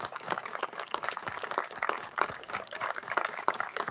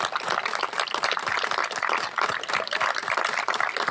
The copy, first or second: first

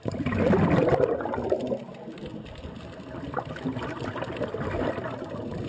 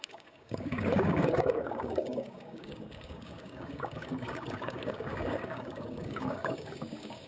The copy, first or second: second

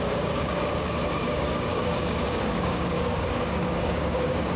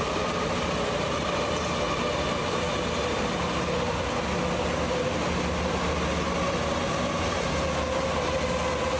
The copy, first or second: first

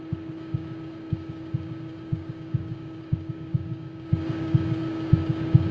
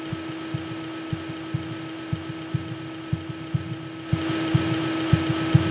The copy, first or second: first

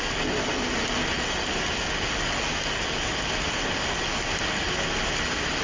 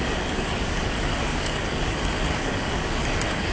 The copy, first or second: second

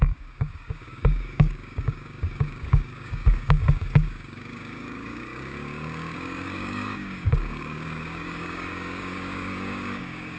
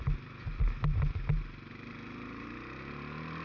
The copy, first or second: first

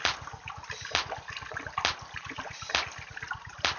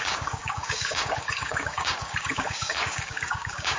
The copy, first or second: second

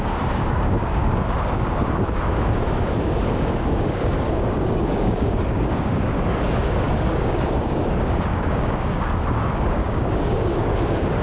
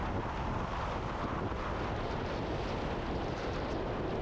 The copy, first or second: first